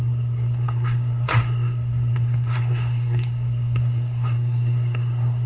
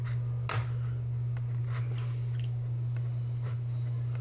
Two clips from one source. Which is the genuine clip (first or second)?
second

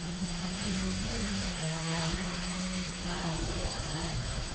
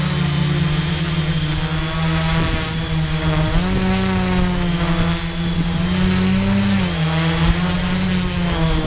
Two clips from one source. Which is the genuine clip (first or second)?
second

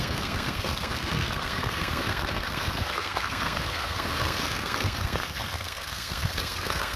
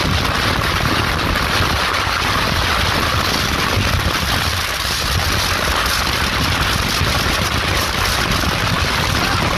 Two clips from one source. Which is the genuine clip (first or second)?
second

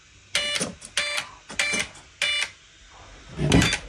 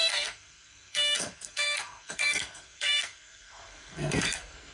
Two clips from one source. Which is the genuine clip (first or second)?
first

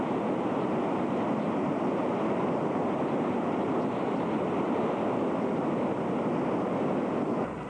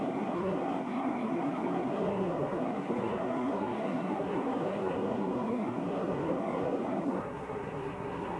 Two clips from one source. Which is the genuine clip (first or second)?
first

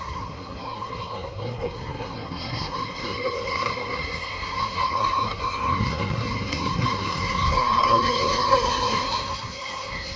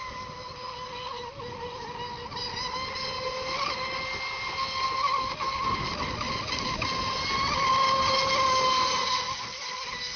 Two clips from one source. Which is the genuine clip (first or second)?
second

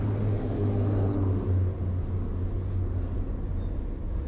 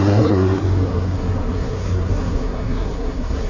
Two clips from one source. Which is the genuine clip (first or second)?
first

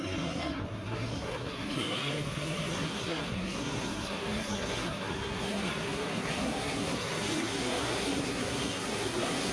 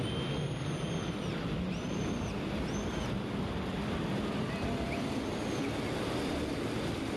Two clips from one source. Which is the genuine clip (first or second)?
second